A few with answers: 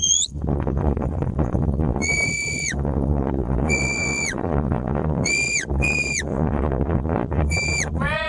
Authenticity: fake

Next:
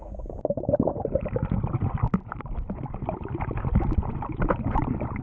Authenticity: real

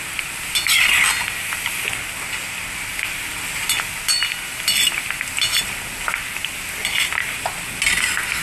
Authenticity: real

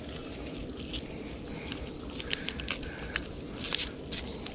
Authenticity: real